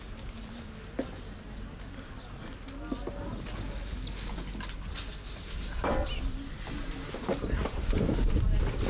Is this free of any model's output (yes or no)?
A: yes